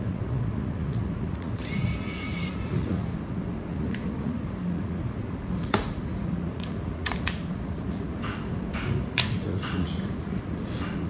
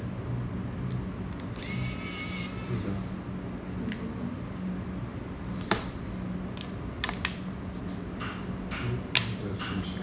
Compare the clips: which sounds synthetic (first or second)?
first